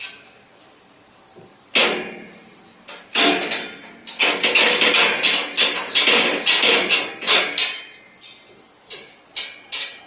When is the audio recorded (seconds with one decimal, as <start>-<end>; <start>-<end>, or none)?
0.0-1.8; 3.8-5.4; 7.1-10.1